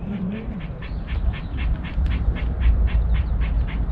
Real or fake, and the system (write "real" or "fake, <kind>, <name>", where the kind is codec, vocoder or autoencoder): fake, vocoder, BigVGAN v2